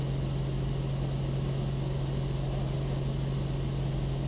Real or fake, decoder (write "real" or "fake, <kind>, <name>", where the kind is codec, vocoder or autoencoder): real